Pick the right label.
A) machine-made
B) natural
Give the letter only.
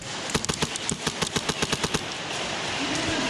A